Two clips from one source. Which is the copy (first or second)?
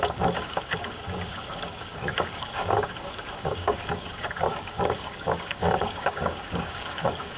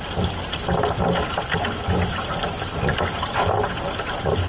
first